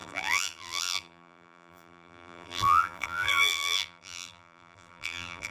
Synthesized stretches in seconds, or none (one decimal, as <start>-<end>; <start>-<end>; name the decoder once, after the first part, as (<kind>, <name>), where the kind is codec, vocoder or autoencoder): 0.0-5.5 (vocoder, BigVGAN v2)